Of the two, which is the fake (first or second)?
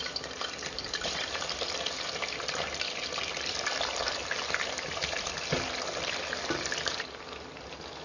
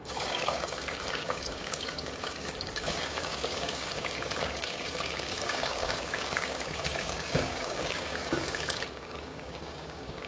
second